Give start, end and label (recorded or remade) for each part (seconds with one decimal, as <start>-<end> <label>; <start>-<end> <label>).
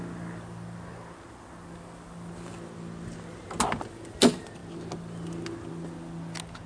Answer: 0.0-6.7 recorded